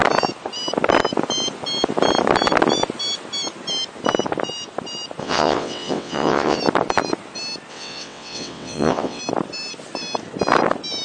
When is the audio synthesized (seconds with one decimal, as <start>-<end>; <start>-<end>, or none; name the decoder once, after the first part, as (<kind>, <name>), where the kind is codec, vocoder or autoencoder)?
5.2-6.6 (vocoder, WaveNeXt); 7.7-9.2